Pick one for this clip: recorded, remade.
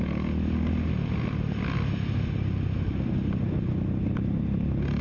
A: recorded